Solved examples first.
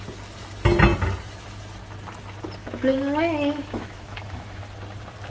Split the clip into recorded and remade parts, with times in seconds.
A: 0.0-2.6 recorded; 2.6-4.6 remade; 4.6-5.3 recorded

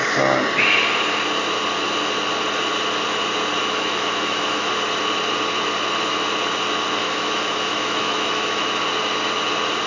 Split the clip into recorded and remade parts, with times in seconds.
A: 0.0-3.6 recorded; 3.6-4.7 remade; 4.7-7.0 recorded; 7.0-8.7 remade; 8.7-9.9 recorded

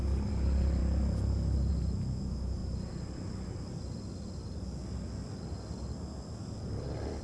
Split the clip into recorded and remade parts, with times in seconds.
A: 0.0-7.2 recorded

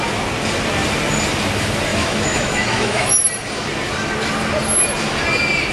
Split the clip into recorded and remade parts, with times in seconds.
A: 0.0-1.9 recorded; 1.9-3.1 remade; 3.1-5.7 recorded

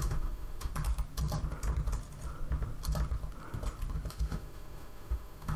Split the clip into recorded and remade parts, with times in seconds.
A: 0.0-0.7 remade; 0.7-4.1 recorded; 4.1-5.6 remade

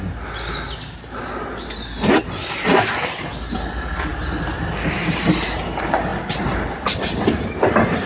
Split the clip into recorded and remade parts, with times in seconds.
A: 0.0-8.1 recorded